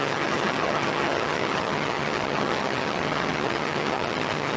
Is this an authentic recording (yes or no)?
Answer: no